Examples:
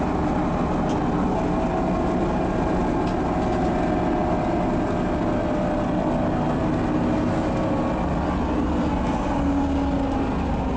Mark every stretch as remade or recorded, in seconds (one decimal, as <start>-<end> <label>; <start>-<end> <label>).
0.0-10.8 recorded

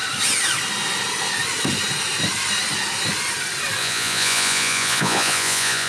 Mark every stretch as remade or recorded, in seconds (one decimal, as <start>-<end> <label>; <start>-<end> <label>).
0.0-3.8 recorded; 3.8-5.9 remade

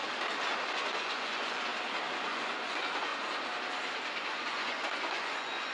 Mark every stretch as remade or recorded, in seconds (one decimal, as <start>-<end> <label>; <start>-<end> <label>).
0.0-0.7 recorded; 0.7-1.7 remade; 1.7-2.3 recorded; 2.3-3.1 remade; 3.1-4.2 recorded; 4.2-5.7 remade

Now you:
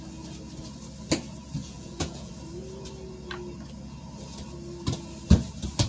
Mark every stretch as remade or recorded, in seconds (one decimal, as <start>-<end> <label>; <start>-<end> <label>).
0.0-1.6 recorded; 1.6-2.3 remade; 2.3-5.9 recorded

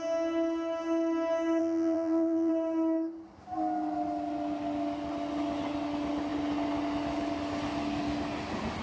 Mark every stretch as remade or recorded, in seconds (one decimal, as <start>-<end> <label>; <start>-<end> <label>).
0.0-1.6 recorded; 1.6-2.5 remade; 2.5-8.8 recorded

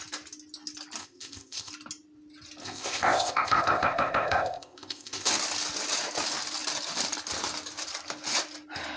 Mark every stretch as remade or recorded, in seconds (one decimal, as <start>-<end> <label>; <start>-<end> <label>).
0.0-1.0 recorded; 1.0-1.7 remade; 1.7-2.6 recorded; 2.6-5.3 remade; 5.3-9.0 recorded

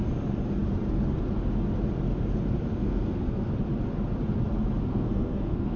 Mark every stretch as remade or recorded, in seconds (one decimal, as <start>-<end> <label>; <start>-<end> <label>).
0.0-2.7 recorded; 2.7-3.5 remade; 3.5-4.9 recorded; 4.9-5.8 remade

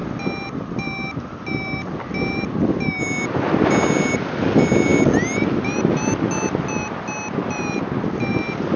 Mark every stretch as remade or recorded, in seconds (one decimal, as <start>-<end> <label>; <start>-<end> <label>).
0.0-8.8 recorded